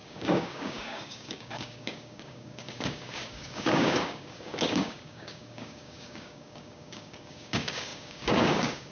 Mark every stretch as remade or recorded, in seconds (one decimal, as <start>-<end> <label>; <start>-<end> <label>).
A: 0.0-8.9 remade